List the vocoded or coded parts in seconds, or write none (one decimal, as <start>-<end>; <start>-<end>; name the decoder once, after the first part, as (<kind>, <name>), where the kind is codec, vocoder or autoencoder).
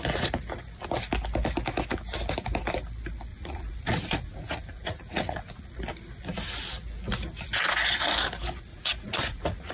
3.3-5.6 (vocoder, Vocos); 8.7-9.7